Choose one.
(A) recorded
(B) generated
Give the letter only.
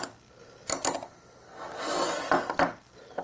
A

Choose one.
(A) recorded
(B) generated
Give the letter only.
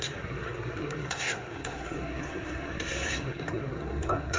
B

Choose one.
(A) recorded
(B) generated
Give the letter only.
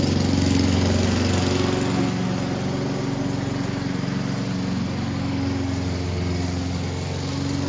A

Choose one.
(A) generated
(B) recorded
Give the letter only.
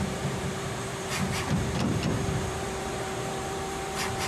A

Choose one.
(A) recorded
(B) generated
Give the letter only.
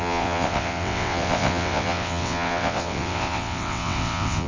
B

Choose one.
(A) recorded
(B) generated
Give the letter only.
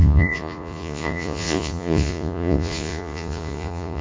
B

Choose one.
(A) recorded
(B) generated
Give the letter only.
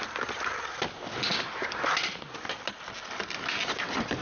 A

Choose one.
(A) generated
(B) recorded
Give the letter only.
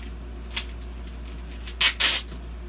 B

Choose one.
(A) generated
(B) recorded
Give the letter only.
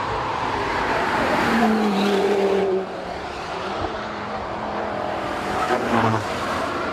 A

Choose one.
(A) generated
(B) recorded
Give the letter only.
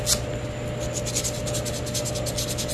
B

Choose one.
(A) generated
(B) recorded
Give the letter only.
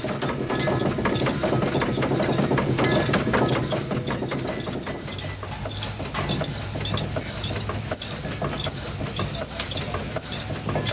B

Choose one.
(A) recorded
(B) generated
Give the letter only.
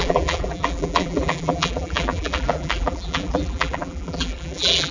B